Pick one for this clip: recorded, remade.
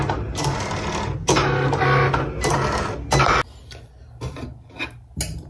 recorded